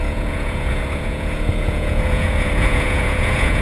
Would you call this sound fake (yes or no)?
yes